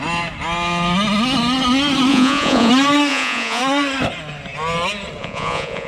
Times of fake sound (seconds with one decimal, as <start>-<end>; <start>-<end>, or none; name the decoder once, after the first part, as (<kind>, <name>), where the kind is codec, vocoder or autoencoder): 2.1-2.7 (vocoder, Vocos); 3.1-3.6; 5.2-5.9